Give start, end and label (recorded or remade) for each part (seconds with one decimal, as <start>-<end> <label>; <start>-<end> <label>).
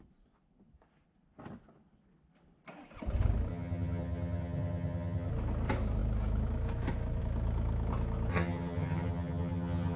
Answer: 0.0-3.5 recorded; 3.5-5.3 remade; 5.3-8.3 recorded; 8.3-10.0 remade